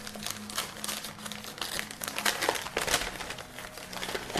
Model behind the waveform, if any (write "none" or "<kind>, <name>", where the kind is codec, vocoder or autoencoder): none